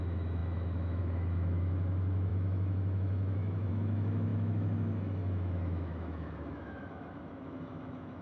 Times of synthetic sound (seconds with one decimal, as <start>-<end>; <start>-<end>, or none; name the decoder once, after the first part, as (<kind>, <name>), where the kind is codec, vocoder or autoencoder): 0.0-8.2 (autoencoder, DAC-VAE)